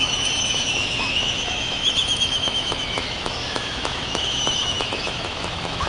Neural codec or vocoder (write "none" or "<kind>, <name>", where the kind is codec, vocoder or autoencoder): autoencoder, DAC-VAE